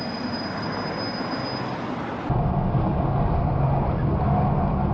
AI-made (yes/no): no